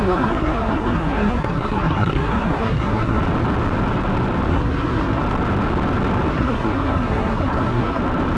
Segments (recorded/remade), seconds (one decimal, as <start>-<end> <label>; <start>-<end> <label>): 0.0-3.2 remade; 3.2-4.5 recorded; 4.5-5.2 remade; 5.2-6.3 recorded; 6.3-8.0 remade; 8.0-8.4 recorded